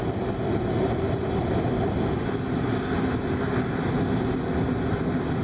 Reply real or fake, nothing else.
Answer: real